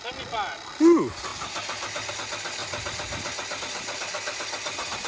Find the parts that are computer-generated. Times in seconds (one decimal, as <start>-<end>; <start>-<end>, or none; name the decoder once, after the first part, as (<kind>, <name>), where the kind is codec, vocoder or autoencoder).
none